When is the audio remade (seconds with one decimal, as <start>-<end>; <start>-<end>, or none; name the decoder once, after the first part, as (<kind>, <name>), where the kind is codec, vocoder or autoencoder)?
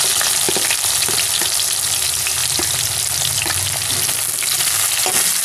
none